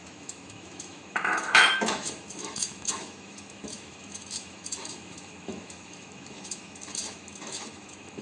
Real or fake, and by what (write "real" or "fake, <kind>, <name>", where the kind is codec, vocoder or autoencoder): fake, autoencoder, DAC-VAE